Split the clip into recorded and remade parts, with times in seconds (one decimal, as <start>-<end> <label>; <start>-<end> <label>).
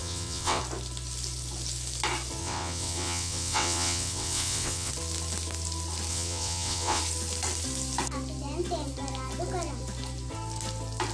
0.0-0.6 remade; 0.6-2.4 recorded; 2.4-4.9 remade; 4.9-6.1 recorded; 6.1-7.0 remade; 7.0-11.1 recorded